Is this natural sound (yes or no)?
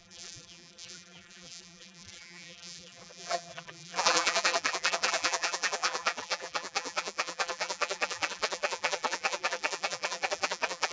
no